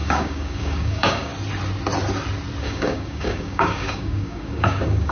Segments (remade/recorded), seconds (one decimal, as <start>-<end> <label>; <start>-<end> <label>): 0.0-1.3 remade; 1.3-2.6 recorded; 2.6-5.1 remade